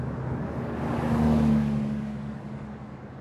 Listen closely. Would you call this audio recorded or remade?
remade